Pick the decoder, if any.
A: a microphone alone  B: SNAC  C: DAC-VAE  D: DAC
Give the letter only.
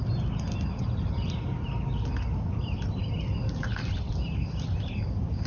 A